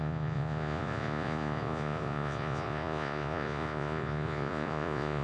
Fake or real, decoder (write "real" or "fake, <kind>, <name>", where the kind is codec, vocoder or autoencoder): fake, vocoder, Vocos